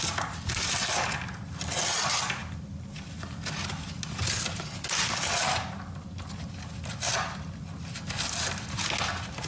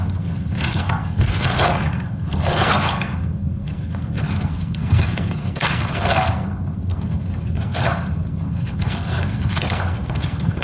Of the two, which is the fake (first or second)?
second